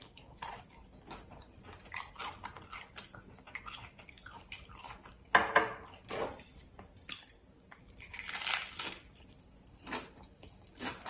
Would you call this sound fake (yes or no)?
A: no